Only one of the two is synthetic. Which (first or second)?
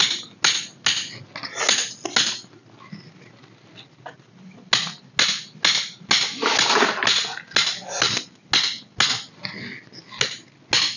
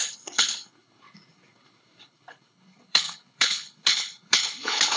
second